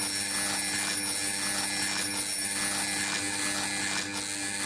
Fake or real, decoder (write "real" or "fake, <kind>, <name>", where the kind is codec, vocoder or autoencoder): real